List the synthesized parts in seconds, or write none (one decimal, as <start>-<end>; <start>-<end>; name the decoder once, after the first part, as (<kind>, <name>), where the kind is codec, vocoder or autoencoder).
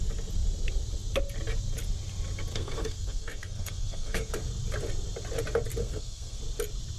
2.5-4.3 (codec, SNAC); 5.8-6.4